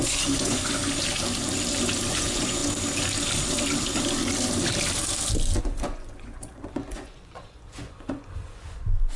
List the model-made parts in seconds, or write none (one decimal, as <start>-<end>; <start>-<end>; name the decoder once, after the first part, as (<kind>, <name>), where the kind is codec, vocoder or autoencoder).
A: 0.0-0.8 (vocoder, Vocos); 2.1-2.6; 5.6-9.2